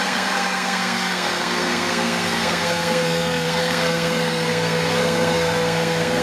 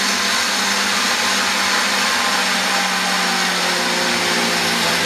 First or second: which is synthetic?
first